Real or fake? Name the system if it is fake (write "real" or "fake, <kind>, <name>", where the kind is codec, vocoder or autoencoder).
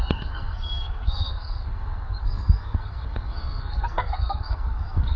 fake, codec, SNAC